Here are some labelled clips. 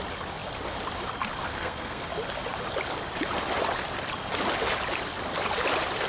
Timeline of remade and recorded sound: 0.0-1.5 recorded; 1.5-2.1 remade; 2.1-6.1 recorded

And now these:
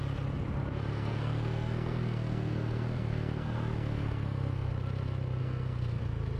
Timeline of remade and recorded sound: 0.0-0.9 recorded; 0.9-4.7 remade; 4.7-5.4 recorded; 5.4-6.0 remade; 6.0-6.4 recorded

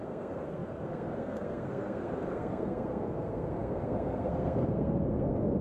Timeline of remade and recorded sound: 0.0-5.6 remade

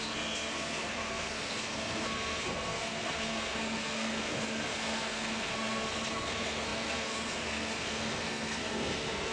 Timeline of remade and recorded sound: 0.0-9.3 remade

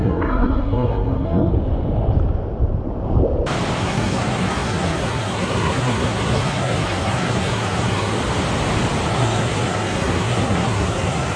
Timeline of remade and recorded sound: 0.0-1.5 remade; 1.5-3.8 recorded; 3.8-8.2 remade; 8.2-9.1 recorded; 9.1-11.4 remade